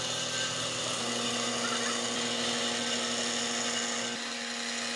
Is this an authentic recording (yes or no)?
yes